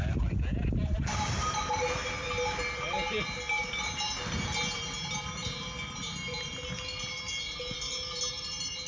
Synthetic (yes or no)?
no